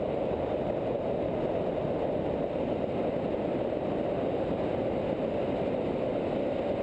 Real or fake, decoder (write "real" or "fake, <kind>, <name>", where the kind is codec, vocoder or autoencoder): real